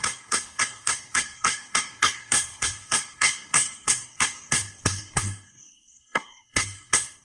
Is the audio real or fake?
fake